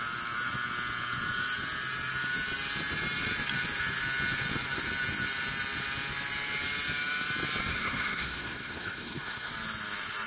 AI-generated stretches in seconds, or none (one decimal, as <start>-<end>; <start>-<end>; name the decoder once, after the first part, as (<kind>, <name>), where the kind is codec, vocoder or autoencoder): 7.7-9.5 (codec, SNAC)